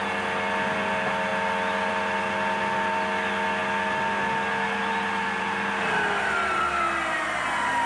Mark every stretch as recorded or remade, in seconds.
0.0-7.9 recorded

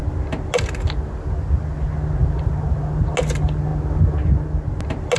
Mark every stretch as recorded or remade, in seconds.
0.0-5.2 recorded

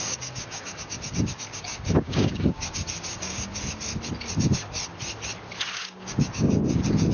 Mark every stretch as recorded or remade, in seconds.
0.0-3.5 remade; 3.5-5.7 recorded; 5.7-6.6 remade; 6.6-7.1 recorded

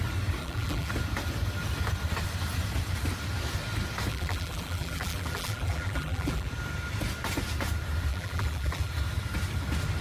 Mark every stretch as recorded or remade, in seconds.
0.0-0.4 recorded; 0.4-0.9 remade; 0.9-4.1 recorded; 4.1-6.5 remade; 6.5-8.1 recorded; 8.1-8.9 remade; 8.9-10.0 recorded

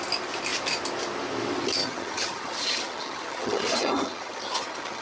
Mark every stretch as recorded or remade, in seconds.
0.0-1.8 recorded; 1.8-5.0 remade